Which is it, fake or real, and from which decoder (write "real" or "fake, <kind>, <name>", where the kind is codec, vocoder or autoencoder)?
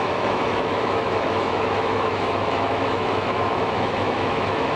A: fake, autoencoder, DAC-VAE